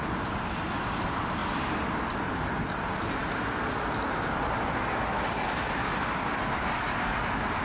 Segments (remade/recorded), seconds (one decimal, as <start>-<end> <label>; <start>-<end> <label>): 0.0-7.6 recorded